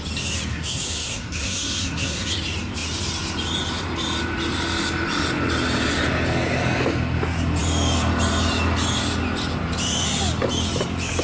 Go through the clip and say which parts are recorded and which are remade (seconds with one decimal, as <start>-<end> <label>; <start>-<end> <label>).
0.0-0.5 recorded; 0.5-2.3 remade; 2.3-11.2 recorded